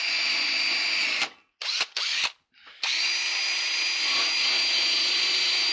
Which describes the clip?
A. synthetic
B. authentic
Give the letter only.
B